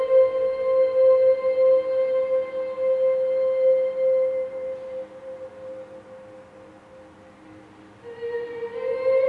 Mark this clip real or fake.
real